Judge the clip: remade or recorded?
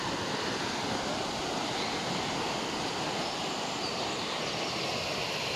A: recorded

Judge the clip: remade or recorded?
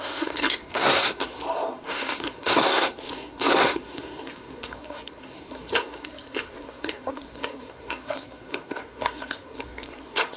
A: remade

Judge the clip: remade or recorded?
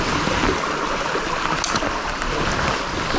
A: recorded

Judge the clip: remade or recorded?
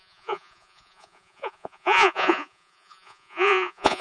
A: remade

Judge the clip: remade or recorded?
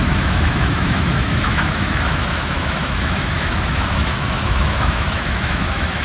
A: remade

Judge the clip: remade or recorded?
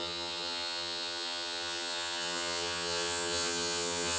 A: remade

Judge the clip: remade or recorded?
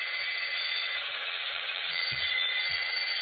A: remade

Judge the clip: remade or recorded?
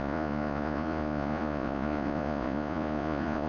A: remade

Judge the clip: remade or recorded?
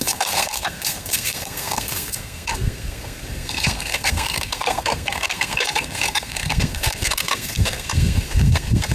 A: remade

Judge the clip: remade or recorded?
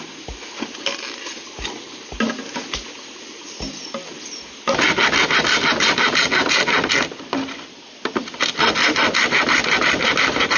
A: recorded